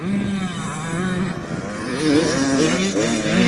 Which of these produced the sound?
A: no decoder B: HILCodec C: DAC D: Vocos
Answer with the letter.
A